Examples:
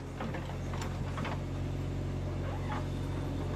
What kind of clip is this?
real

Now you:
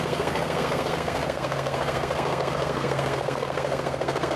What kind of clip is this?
fake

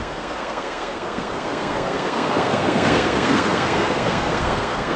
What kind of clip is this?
fake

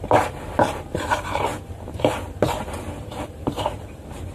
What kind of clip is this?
fake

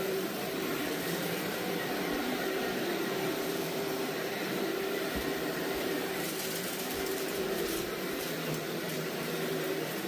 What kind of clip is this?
fake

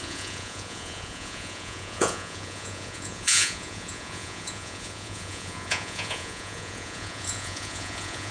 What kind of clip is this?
fake